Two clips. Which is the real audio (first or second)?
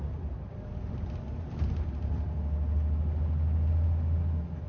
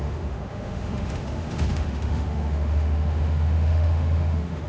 first